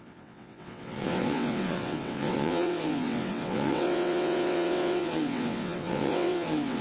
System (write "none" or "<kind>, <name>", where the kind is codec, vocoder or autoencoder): vocoder, WaveNeXt